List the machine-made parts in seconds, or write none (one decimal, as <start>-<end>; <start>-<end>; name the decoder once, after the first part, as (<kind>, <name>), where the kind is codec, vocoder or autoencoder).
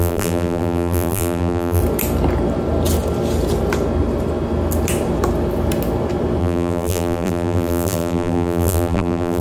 0.0-1.8 (vocoder, BigVGAN v2); 6.4-9.4